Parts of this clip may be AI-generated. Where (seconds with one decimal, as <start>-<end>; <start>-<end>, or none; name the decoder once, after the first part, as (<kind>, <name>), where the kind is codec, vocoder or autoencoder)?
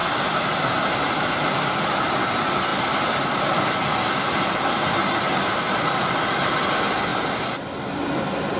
0.0-2.1 (vocoder, BigVGAN v2); 2.7-6.5